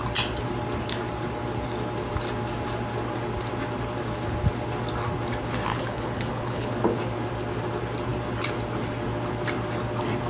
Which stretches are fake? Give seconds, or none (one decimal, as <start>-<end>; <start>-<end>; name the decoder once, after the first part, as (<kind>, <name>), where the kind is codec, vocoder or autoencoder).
5.7-6.7 (codec, HILCodec)